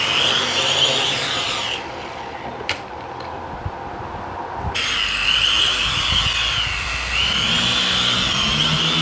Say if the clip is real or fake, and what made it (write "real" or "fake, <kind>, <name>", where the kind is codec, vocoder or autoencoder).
real